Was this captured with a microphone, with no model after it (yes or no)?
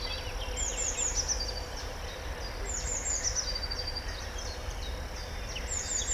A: yes